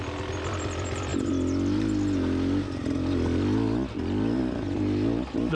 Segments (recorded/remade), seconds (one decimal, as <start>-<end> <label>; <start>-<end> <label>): 0.0-5.5 recorded